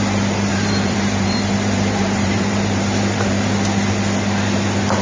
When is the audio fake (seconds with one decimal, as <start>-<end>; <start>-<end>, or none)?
0.5-3.5